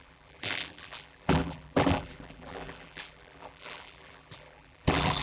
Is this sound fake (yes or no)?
yes